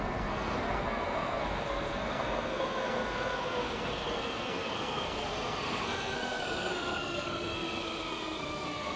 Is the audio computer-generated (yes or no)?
yes